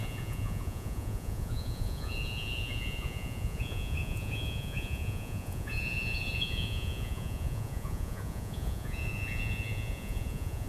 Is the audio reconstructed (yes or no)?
yes